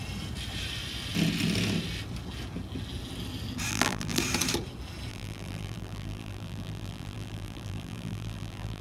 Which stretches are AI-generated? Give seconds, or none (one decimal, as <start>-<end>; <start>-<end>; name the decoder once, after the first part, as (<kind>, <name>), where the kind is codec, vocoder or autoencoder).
3.7-4.2 (vocoder, BigVGAN v2); 5.1-8.8